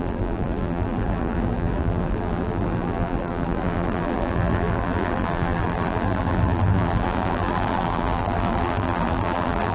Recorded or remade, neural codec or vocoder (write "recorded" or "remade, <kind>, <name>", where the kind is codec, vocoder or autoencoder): remade, vocoder, BigVGAN v2